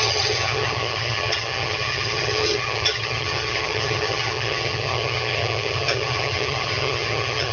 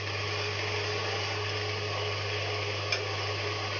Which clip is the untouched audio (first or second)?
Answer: second